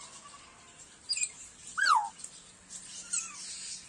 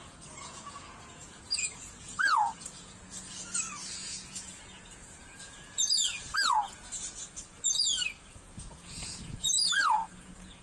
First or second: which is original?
first